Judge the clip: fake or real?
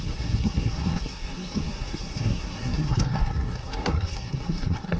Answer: fake